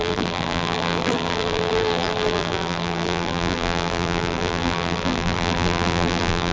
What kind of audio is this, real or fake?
fake